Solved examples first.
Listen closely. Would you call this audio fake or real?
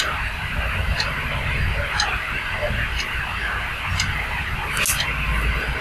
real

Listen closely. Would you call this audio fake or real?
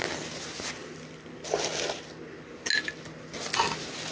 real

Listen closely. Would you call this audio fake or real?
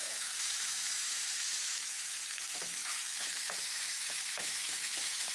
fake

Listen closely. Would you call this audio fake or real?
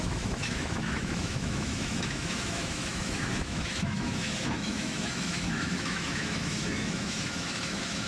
fake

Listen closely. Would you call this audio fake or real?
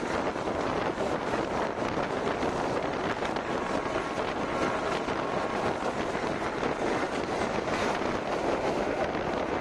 real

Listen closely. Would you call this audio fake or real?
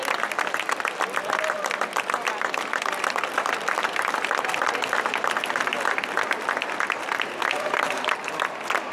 real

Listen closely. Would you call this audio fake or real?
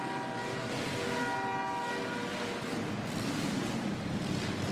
real